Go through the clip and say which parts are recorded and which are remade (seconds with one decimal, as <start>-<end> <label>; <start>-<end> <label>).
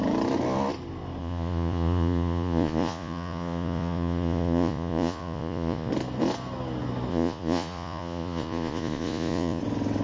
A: 0.0-1.2 recorded; 1.2-5.9 remade; 5.9-7.1 recorded; 7.1-9.6 remade; 9.6-10.0 recorded